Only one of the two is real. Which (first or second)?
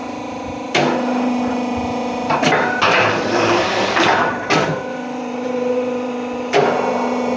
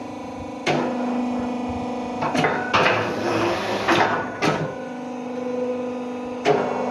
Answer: second